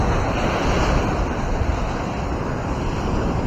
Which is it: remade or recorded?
remade